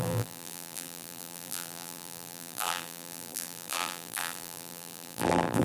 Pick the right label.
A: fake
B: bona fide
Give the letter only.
A